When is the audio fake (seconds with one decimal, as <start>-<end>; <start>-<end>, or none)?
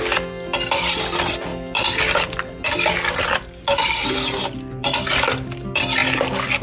none